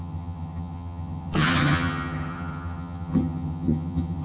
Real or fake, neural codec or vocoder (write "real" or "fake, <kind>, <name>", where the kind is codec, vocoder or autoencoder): fake, vocoder, HiFi-GAN